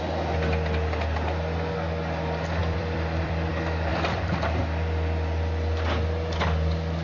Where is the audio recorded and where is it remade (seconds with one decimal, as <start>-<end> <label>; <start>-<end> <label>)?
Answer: 0.0-2.6 recorded; 2.6-3.5 remade; 3.5-3.9 recorded; 3.9-4.6 remade; 4.6-7.0 recorded